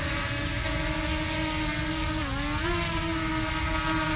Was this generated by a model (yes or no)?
no